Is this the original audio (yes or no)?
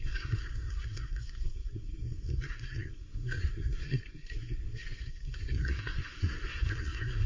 no